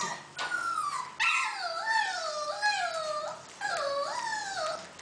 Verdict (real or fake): real